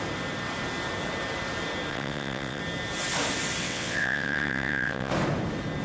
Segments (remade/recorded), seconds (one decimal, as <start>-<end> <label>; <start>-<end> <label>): 0.0-1.9 recorded; 1.9-2.6 remade; 2.6-3.6 recorded; 3.6-5.1 remade; 5.1-5.8 recorded

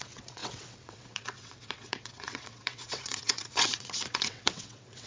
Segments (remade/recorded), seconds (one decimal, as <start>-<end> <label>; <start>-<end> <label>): 0.0-5.1 remade

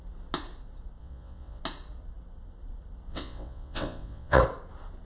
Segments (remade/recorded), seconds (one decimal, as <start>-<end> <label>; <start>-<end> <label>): 0.0-1.0 recorded; 1.0-1.6 remade; 1.6-3.1 recorded; 3.1-4.4 remade; 4.4-5.1 recorded

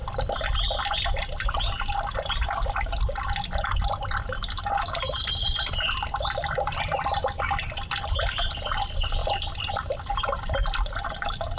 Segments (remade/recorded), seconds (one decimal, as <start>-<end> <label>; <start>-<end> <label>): 0.0-11.6 recorded

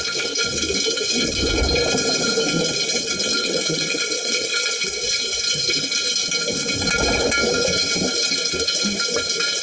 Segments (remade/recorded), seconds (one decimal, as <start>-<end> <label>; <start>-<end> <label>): 0.0-3.4 recorded; 3.4-5.1 remade; 5.1-9.6 recorded

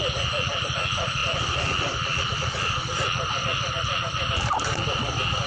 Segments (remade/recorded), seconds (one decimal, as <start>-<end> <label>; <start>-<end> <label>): 0.0-5.5 recorded

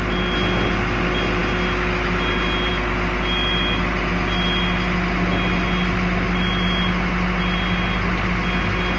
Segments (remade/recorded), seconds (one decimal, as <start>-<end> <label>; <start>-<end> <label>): 0.0-9.0 recorded

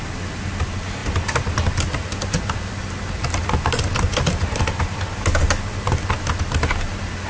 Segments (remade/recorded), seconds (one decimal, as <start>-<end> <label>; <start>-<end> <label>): 0.0-7.3 recorded